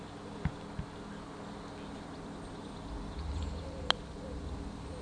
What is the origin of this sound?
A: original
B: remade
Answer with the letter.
A